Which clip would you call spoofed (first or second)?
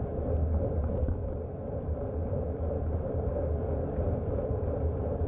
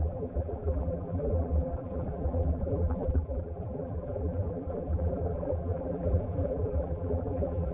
second